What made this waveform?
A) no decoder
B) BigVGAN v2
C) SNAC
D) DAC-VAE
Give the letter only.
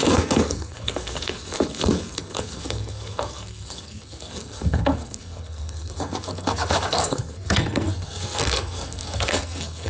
C